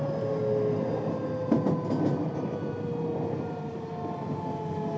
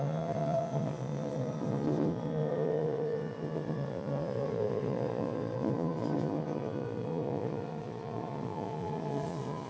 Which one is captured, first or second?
first